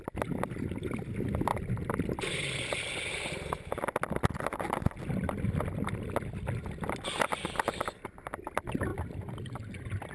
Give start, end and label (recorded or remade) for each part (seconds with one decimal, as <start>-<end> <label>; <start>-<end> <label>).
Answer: 0.0-1.5 recorded; 1.5-5.6 remade; 5.6-8.9 recorded; 8.9-10.1 remade